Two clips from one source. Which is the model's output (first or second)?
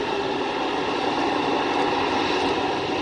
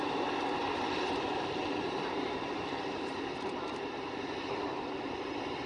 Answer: second